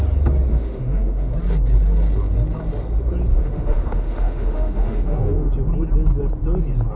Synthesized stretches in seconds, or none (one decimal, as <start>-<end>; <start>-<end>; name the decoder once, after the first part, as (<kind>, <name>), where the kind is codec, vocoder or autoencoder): 0.5-1.3 (autoencoder, DAC-VAE); 3.3-5.5